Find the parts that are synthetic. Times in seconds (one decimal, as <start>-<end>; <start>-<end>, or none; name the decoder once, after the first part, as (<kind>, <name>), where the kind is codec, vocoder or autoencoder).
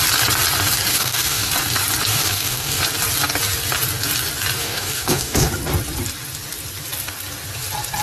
0.9-1.5 (codec, DAC); 2.1-2.8; 4.6-5.5